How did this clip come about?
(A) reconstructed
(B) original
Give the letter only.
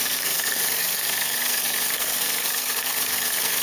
A